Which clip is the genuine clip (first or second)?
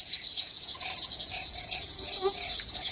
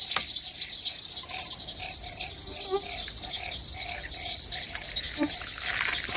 second